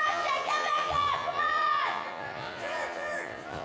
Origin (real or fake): fake